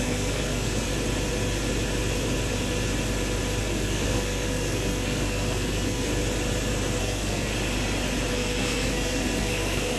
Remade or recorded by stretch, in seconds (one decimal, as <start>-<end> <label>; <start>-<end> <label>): 0.0-0.9 remade; 0.9-3.6 recorded; 3.6-6.1 remade; 6.1-7.0 recorded; 7.0-7.5 remade; 7.5-8.3 recorded; 8.3-10.0 remade